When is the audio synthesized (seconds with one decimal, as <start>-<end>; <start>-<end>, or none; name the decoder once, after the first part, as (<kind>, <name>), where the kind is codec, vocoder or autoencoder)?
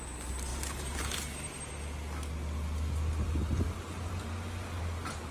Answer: 0.5-1.7 (vocoder, BigVGAN v2); 3.4-4.8